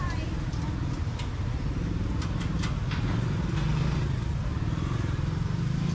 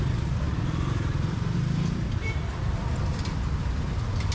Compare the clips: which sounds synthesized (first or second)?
second